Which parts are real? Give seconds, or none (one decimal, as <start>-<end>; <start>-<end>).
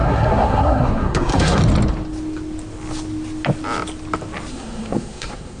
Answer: 1.6-4.5